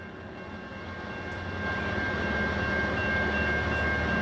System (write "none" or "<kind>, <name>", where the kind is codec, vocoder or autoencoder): none